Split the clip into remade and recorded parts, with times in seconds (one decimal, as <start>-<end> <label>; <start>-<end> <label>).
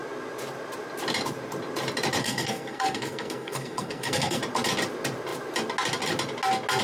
0.0-2.2 recorded; 2.2-4.4 remade; 4.4-6.8 recorded